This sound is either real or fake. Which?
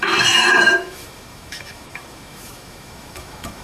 fake